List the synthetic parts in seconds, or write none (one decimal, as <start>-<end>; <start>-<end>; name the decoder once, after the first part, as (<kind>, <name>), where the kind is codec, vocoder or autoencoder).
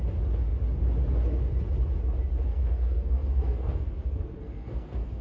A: 2.5-5.2 (codec, SNAC)